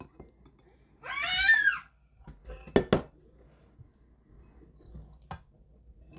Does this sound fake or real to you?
real